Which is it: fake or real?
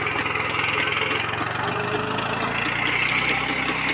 real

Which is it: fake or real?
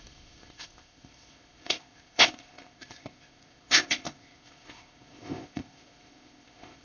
fake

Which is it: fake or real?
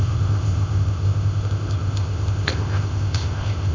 fake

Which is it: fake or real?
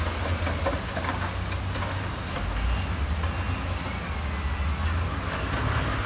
real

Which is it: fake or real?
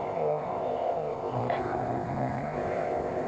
fake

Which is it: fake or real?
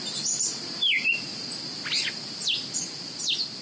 real